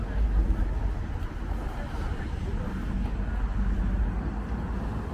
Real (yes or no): yes